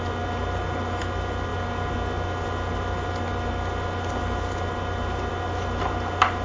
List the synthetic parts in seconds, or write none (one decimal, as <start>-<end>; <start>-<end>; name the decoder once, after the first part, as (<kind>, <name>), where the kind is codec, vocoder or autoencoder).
none